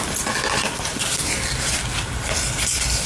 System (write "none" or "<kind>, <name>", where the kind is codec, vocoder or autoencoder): none